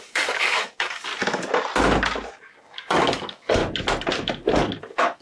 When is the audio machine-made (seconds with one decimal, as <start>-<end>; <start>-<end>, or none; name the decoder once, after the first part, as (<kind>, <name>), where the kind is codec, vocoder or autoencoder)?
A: 0.0-1.1 (codec, DAC); 2.3-3.6; 4.8-5.2